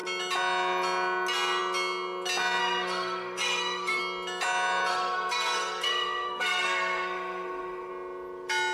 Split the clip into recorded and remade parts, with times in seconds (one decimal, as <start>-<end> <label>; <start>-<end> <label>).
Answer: 0.0-2.6 recorded; 2.6-4.0 remade; 4.0-4.9 recorded; 4.9-7.9 remade; 7.9-8.7 recorded